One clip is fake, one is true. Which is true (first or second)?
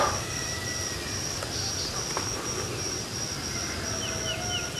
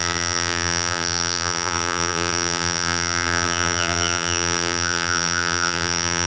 first